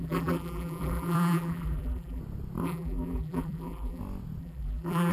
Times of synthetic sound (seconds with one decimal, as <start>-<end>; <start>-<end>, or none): 0.0-2.2; 2.6-4.0; 4.4-5.1